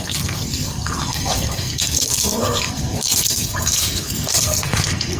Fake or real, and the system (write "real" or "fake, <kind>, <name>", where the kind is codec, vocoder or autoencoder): fake, codec, SNAC